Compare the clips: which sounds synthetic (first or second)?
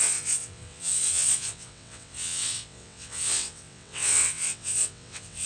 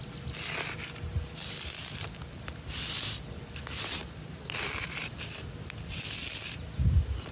first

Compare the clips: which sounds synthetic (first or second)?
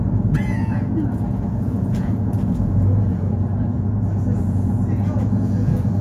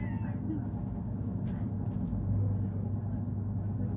first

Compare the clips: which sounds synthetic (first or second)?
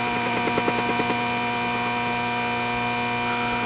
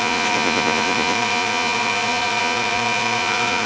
second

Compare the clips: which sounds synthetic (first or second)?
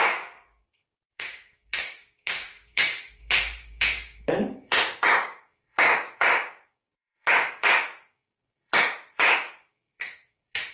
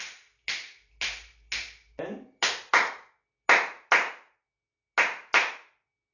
first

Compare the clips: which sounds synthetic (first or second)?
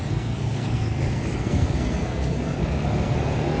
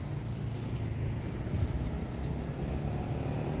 first